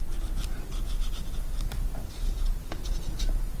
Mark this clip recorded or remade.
recorded